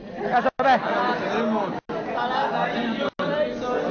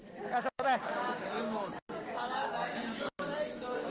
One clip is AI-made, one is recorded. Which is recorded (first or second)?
first